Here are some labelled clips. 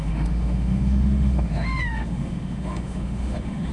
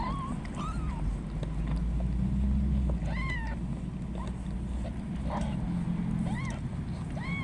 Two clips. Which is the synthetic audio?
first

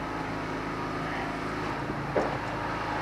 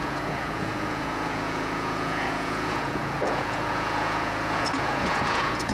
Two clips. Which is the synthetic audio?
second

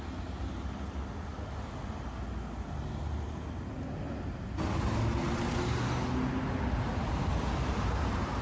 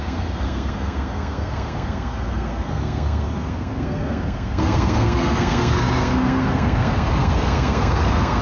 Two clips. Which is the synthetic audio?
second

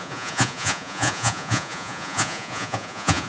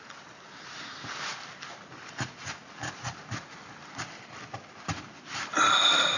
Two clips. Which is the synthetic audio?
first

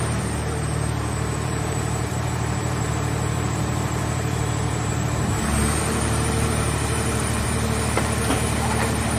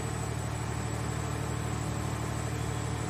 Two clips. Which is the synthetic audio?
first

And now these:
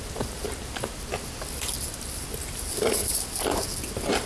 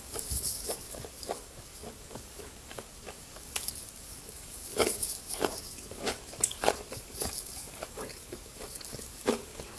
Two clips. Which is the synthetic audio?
second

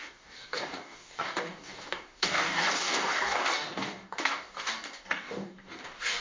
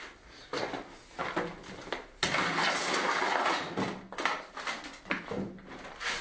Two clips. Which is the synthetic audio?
first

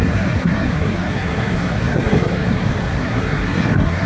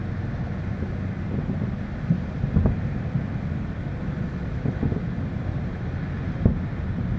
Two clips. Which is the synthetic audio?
first